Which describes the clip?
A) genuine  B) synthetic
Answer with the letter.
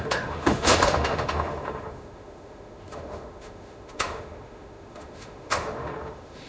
B